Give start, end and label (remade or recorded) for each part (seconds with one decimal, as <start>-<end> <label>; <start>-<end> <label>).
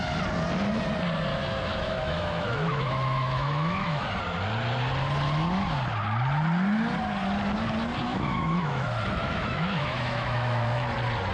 0.0-1.3 recorded; 1.3-4.0 remade; 4.0-8.1 recorded; 8.1-10.9 remade; 10.9-11.3 recorded